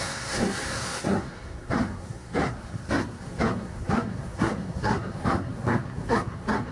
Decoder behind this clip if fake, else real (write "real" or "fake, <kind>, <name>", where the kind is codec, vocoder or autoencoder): fake, codec, SNAC